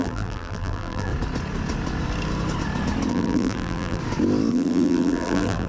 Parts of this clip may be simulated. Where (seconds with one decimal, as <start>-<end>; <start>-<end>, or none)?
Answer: 0.0-1.1; 3.1-4.0; 4.5-5.7